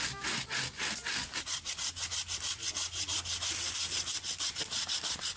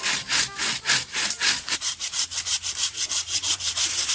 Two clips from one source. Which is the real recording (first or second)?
first